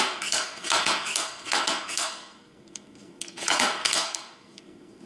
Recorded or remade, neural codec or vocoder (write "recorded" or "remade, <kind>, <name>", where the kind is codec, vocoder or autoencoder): remade, codec, SNAC